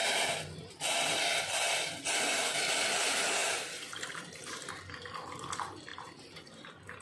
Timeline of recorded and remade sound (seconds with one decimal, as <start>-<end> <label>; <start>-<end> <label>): 0.0-3.4 recorded; 3.4-4.7 remade; 4.7-5.9 recorded; 5.9-6.4 remade; 6.4-7.0 recorded